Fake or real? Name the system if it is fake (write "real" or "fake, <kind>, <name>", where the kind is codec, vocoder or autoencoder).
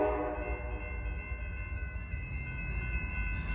real